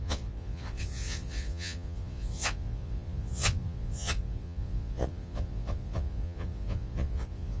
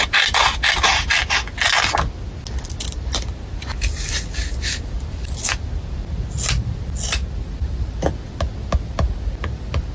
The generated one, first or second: first